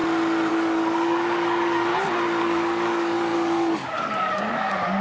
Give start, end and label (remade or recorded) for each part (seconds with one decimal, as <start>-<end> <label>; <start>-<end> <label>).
0.0-0.5 recorded; 0.5-1.9 remade; 1.9-2.4 recorded; 2.4-5.0 remade